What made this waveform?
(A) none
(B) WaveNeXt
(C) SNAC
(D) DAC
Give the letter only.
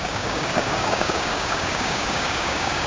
D